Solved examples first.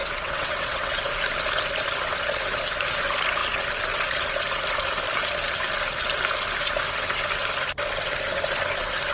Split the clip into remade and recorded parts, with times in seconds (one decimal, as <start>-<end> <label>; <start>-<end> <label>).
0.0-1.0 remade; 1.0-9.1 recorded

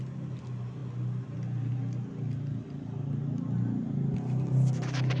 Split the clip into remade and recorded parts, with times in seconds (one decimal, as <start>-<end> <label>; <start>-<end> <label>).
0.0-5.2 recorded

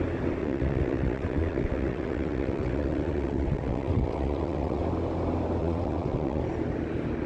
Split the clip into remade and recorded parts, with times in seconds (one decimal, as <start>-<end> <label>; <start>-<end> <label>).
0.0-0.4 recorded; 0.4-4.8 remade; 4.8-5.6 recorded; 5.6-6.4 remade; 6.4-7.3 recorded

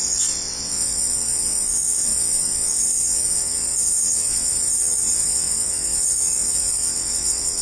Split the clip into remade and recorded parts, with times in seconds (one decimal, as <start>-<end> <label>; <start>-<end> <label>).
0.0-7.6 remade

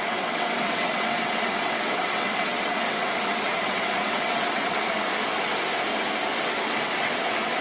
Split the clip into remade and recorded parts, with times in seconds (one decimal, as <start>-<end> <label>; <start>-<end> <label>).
0.0-5.1 remade; 5.1-6.4 recorded; 6.4-7.6 remade

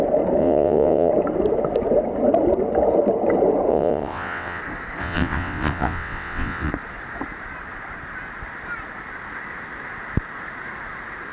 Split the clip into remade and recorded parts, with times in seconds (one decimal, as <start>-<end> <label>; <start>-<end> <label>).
0.0-0.4 recorded; 0.4-1.1 remade; 1.1-3.7 recorded; 3.7-4.6 remade; 4.6-5.0 recorded; 5.0-6.7 remade; 6.7-11.3 recorded

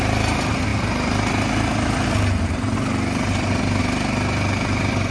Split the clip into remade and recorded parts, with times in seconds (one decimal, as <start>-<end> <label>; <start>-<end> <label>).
0.0-5.1 recorded